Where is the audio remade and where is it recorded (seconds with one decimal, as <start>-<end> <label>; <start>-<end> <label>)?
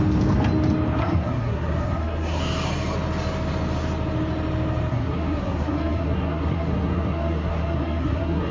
0.0-1.0 recorded; 1.0-2.4 remade; 2.4-4.9 recorded; 4.9-8.5 remade